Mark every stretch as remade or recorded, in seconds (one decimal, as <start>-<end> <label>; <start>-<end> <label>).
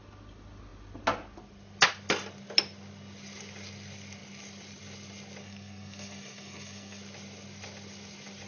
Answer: 0.0-5.4 recorded; 5.4-7.0 remade; 7.0-8.5 recorded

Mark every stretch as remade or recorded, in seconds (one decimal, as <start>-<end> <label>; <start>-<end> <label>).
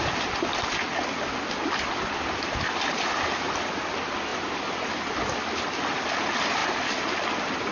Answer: 0.0-7.7 recorded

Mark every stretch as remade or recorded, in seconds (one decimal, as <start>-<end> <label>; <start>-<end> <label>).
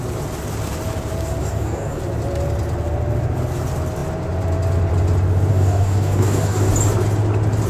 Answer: 0.0-1.4 recorded; 1.4-2.0 remade; 2.0-5.5 recorded; 5.5-6.7 remade; 6.7-7.7 recorded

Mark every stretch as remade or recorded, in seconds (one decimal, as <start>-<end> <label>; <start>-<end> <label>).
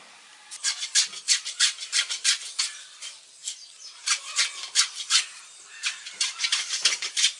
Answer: 0.0-0.5 remade; 0.5-2.6 recorded; 2.6-3.4 remade; 3.4-5.3 recorded; 5.3-7.4 remade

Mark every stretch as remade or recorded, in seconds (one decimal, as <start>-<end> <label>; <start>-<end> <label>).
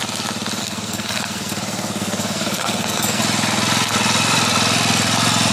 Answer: 0.0-0.6 recorded; 0.6-3.2 remade; 3.2-5.5 recorded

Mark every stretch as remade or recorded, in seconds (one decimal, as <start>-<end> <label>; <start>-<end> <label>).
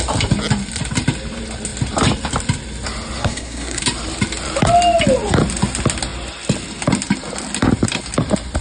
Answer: 0.0-3.2 recorded; 3.2-3.8 remade; 3.8-8.6 recorded